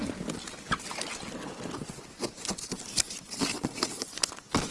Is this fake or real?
real